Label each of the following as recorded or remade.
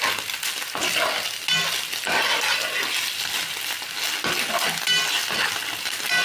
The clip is recorded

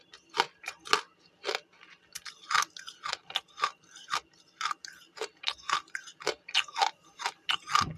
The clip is recorded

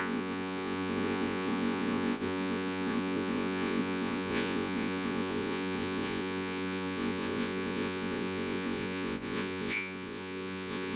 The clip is remade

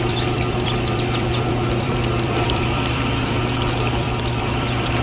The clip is remade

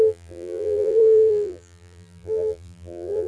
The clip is remade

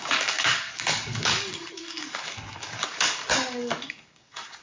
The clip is remade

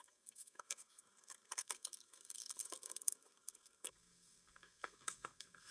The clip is remade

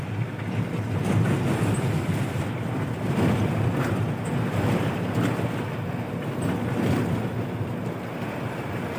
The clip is recorded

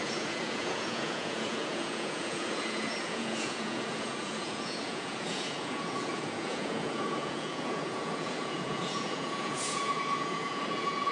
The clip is remade